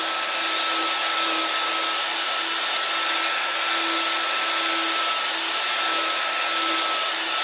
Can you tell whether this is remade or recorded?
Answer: recorded